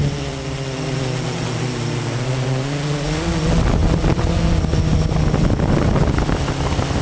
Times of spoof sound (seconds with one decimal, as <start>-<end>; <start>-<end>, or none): none